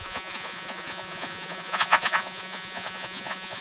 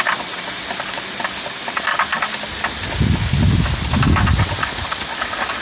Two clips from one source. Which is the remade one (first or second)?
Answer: first